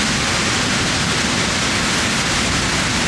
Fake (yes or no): no